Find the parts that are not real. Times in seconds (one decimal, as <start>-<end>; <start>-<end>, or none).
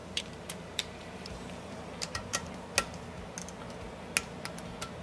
0.0-2.5